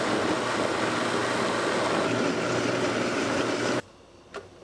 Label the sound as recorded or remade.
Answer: recorded